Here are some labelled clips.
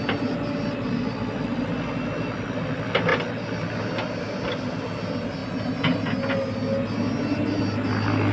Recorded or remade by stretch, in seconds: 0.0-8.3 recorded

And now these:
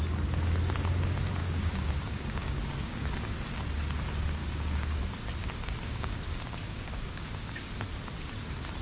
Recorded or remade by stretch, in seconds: 0.0-1.4 recorded; 1.4-3.1 remade; 3.1-4.4 recorded; 4.4-5.0 remade; 5.0-5.4 recorded; 5.4-7.6 remade; 7.6-8.8 recorded

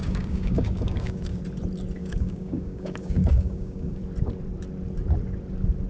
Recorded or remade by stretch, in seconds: 0.0-1.4 remade; 1.4-2.0 recorded; 2.0-4.0 remade; 4.0-5.9 recorded